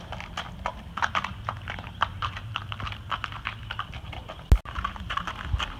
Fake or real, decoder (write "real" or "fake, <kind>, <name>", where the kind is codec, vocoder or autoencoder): real